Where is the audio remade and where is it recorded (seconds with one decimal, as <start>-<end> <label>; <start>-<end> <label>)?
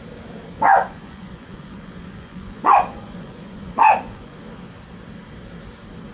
0.0-0.7 recorded; 0.7-4.4 remade; 4.4-6.1 recorded